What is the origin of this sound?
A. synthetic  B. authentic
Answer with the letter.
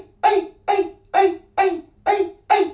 B